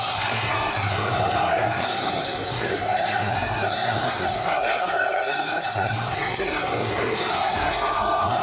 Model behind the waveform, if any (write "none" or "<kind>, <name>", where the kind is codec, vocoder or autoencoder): codec, SNAC